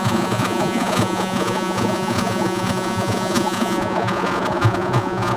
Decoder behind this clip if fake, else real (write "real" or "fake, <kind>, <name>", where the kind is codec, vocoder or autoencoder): fake, vocoder, Vocos